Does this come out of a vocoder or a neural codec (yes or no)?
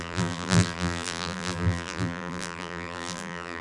yes